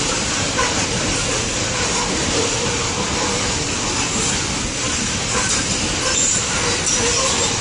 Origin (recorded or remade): recorded